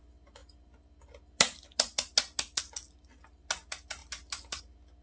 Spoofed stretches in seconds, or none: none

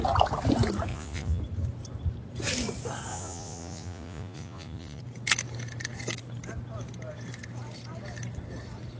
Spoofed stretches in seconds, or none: 0.9-1.4 (vocoder, Vocos); 3.1-5.0

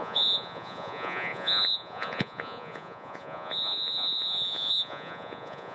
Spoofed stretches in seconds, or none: 0.0-5.7 (vocoder, Vocos)

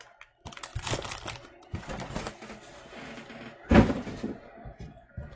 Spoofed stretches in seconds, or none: none

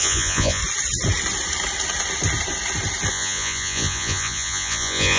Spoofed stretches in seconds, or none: 0.0-0.6 (vocoder, Vocos); 3.1-5.2

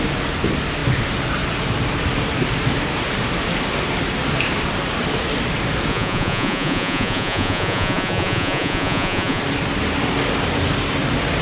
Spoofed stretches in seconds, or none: 5.9-9.4 (vocoder, Vocos)

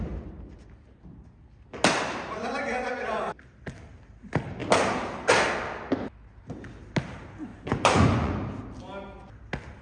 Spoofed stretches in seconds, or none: 7.5-8.3 (vocoder, Vocos)

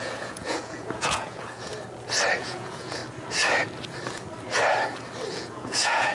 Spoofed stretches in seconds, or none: 0.0-1.7 (vocoder, Vocos); 2.4-3.0; 5.3-6.1